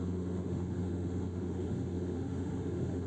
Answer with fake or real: fake